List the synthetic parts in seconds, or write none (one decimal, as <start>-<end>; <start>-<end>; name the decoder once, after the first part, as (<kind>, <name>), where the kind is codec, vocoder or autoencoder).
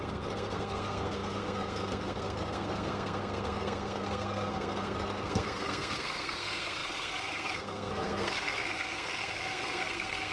0.0-10.3 (codec, SNAC)